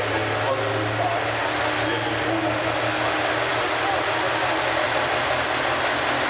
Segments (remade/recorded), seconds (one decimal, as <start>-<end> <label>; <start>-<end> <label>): 0.0-6.3 recorded